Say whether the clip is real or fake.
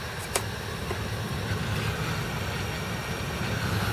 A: real